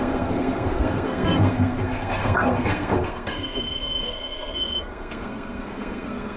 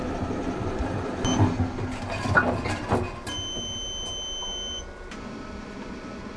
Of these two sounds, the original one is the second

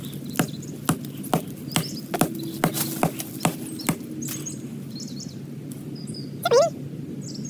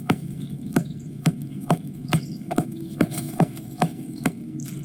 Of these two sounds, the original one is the first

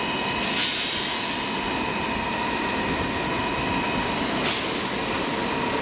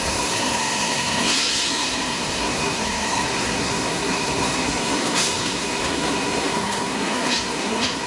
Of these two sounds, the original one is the first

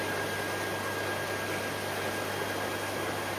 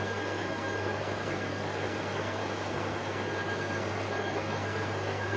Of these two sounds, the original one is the first